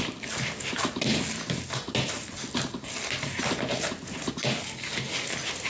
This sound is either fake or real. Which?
real